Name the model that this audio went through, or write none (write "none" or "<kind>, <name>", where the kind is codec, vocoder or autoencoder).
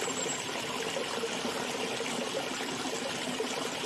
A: none